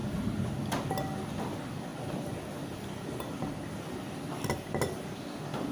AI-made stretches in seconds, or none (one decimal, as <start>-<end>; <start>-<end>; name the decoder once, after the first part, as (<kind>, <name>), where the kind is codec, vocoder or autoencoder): none